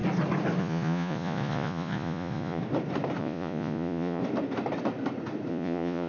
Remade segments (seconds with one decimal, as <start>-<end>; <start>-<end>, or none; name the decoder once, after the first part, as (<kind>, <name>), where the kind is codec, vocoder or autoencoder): 0.6-2.6 (vocoder, Vocos); 3.2-4.2; 5.5-6.1